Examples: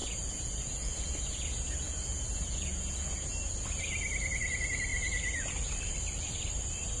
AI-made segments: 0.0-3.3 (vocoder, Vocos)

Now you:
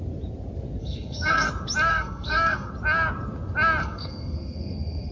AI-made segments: 0.8-1.5 (codec, SNAC); 1.9-2.7; 3.8-5.1

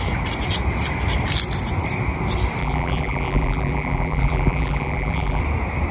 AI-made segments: 2.6-5.4 (vocoder, BigVGAN v2)

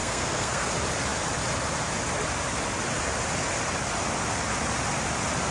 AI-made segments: 0.0-0.7 (codec, SNAC)

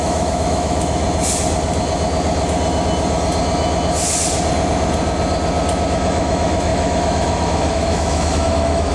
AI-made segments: 0.0-1.0 (autoencoder, DAC-VAE); 5.9-8.9

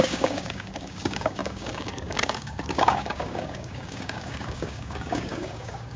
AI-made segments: 0.0-6.0 (codec, DAC)

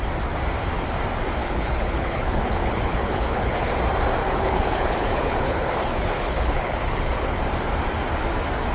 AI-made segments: 1.4-3.7 (codec, HILCodec); 4.2-7.4